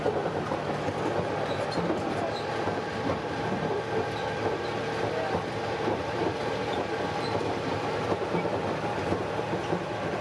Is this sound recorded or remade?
recorded